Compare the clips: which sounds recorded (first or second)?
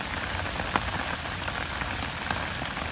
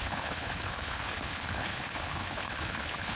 first